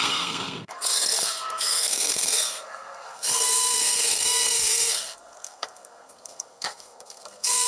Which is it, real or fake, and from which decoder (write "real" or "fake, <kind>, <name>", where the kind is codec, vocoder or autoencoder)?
fake, codec, SNAC